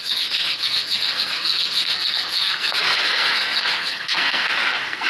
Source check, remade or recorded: remade